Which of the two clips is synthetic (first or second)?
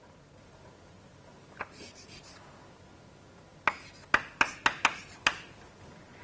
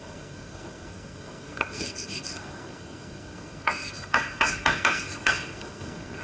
second